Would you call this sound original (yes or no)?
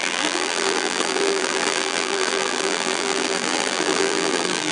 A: no